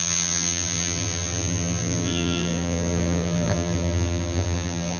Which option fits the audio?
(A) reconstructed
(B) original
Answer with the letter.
A